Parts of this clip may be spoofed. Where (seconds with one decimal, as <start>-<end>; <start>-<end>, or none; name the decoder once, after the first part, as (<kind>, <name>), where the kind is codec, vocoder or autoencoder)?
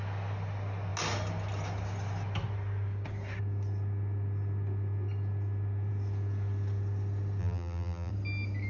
7.4-8.1 (vocoder, BigVGAN v2)